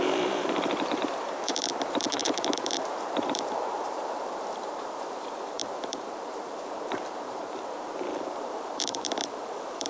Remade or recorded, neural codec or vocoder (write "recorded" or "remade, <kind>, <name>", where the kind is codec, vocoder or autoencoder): remade, vocoder, BigVGAN v2